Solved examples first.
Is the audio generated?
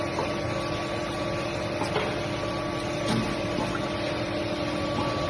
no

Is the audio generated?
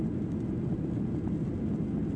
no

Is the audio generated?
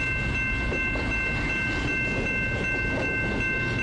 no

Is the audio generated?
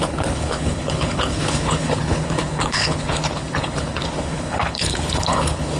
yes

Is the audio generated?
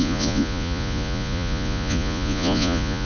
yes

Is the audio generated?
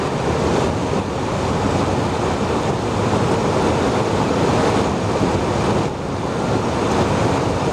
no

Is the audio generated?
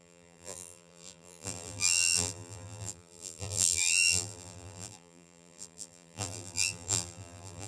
yes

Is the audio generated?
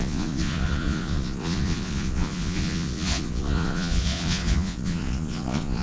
yes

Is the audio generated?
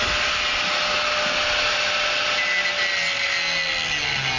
no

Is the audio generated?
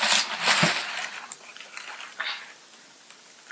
no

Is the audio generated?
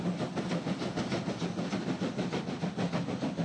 no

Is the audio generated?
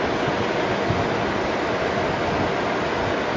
no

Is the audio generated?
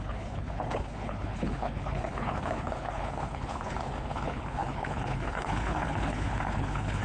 yes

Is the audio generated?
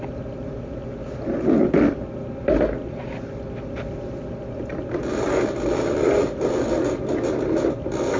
no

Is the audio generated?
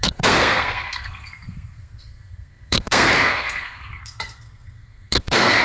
yes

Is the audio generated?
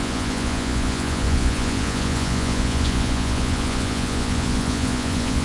yes